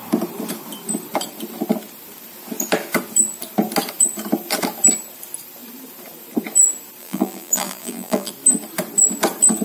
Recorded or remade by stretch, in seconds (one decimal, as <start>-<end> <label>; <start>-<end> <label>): 0.0-7.0 recorded; 7.0-8.3 remade; 8.3-9.6 recorded